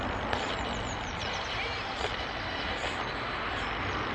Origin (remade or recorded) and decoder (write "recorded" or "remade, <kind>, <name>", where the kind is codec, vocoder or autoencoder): recorded